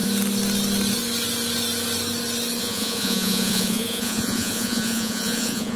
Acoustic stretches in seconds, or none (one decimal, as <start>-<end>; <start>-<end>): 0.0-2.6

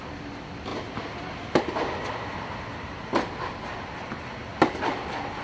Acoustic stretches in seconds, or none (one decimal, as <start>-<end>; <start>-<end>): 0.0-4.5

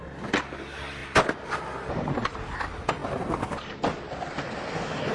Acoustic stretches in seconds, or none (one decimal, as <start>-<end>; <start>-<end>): 0.0-5.1

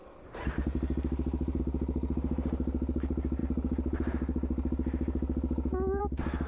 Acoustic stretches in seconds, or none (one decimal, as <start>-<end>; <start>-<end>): 0.0-6.5

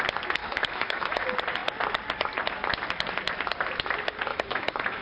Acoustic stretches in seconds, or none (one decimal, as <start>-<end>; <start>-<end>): 0.0-0.4; 1.2-4.3

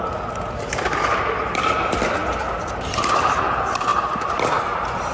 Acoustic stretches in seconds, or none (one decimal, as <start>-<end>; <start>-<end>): 0.0-5.1